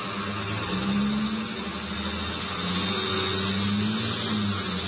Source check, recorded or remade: recorded